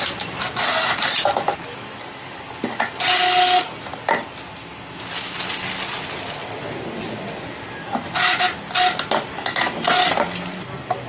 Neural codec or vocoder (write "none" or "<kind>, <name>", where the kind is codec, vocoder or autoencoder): none